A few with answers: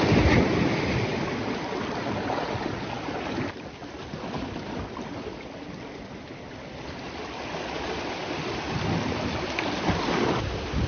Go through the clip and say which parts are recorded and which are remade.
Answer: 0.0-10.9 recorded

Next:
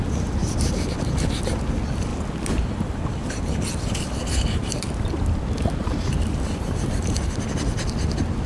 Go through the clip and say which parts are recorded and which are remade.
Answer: 0.0-0.4 recorded; 0.4-0.9 remade; 0.9-2.1 recorded; 2.1-7.2 remade; 7.2-8.5 recorded

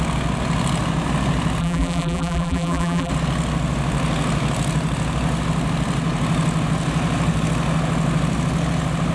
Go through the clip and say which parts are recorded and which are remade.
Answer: 0.0-1.6 recorded; 1.6-3.1 remade; 3.1-9.1 recorded

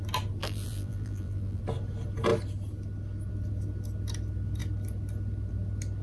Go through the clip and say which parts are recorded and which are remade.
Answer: 0.0-0.4 recorded; 0.4-1.6 remade; 1.6-6.0 recorded

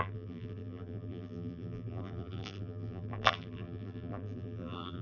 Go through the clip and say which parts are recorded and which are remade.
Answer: 0.0-5.0 remade

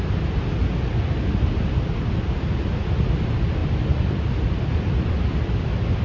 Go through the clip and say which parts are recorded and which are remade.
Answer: 0.0-6.0 recorded

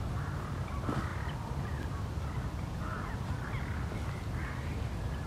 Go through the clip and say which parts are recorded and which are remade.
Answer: 0.0-1.1 recorded; 1.1-3.5 remade; 3.5-5.3 recorded

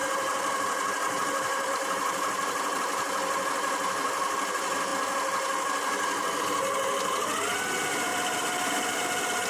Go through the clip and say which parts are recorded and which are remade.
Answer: 0.0-1.7 remade; 1.7-8.1 recorded; 8.1-8.9 remade; 8.9-9.5 recorded